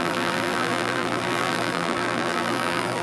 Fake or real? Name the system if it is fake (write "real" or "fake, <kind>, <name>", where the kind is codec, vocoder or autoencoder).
fake, vocoder, BigVGAN v2